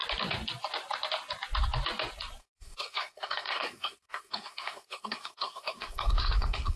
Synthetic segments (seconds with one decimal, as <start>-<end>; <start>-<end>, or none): 2.4-6.8